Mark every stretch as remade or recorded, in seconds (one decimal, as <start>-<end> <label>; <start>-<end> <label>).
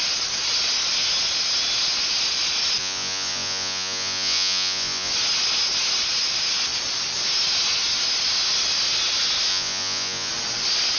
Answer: 0.0-2.8 recorded; 2.8-5.1 remade; 5.1-9.5 recorded; 9.5-10.3 remade; 10.3-11.0 recorded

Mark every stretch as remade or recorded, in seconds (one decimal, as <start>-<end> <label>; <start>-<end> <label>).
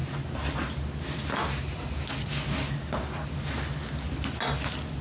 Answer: 0.0-5.0 recorded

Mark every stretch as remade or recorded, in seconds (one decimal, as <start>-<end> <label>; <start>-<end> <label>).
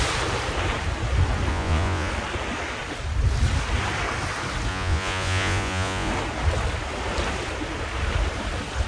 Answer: 0.0-1.5 recorded; 1.5-2.1 remade; 2.1-4.7 recorded; 4.7-6.1 remade; 6.1-8.9 recorded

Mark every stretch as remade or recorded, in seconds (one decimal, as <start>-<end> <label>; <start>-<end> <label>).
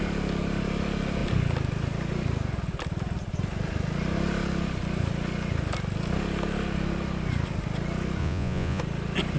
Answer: 0.0-8.2 recorded; 8.2-8.8 remade; 8.8-9.4 recorded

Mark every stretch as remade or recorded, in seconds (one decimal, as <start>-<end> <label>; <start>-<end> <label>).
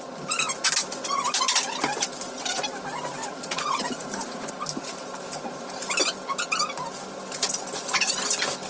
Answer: 0.0-3.2 recorded; 3.2-4.5 remade; 4.5-8.7 recorded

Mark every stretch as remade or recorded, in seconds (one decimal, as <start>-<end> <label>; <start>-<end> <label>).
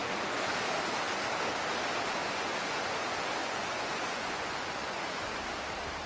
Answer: 0.0-0.5 remade; 0.5-2.2 recorded; 2.2-3.0 remade; 3.0-3.4 recorded; 3.4-5.4 remade; 5.4-6.1 recorded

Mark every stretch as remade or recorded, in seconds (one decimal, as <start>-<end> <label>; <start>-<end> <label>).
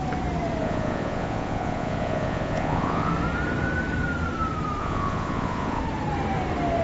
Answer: 0.0-0.6 recorded; 0.6-3.1 remade; 3.1-4.8 recorded; 4.8-5.8 remade; 5.8-6.8 recorded